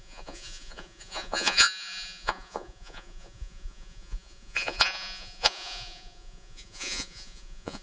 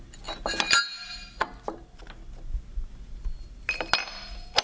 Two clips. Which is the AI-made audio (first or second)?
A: first